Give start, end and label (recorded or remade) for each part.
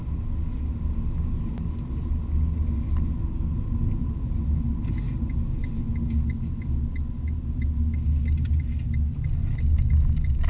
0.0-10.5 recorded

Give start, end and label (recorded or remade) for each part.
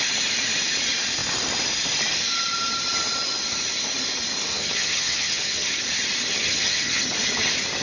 0.0-4.5 recorded; 4.5-5.8 remade; 5.8-6.3 recorded; 6.3-7.0 remade; 7.0-7.8 recorded